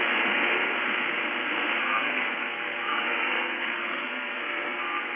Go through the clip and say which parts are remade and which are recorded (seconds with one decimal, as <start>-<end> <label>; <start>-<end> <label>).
0.0-1.8 recorded; 1.8-5.2 remade